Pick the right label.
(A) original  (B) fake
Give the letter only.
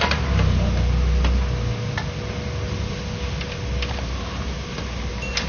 A